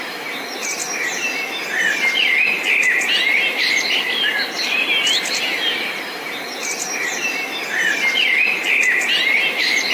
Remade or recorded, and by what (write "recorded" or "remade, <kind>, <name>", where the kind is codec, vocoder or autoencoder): recorded